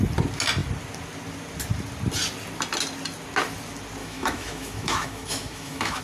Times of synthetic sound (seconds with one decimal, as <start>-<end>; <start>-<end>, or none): 4.0-6.0